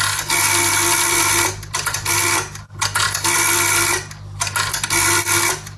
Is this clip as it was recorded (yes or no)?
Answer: yes